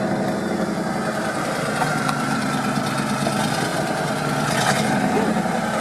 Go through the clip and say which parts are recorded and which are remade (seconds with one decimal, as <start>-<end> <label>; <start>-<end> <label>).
0.0-1.9 recorded; 1.9-2.8 remade; 2.8-5.8 recorded